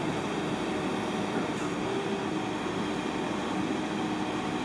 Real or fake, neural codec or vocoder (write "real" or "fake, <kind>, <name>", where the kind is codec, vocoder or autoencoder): real